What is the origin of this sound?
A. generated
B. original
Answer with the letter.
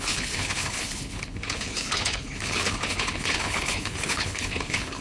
A